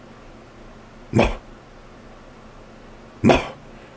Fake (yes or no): no